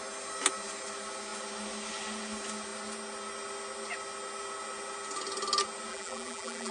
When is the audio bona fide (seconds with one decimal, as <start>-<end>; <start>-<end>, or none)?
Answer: 0.0-5.9